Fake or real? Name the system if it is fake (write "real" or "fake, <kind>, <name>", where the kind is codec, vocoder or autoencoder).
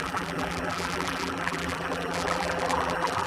fake, vocoder, BigVGAN v2